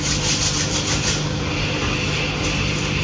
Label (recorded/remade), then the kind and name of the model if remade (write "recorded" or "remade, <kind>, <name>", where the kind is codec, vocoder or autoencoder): recorded